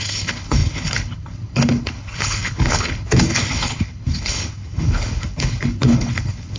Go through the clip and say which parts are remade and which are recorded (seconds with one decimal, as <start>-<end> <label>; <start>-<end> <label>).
0.0-6.6 remade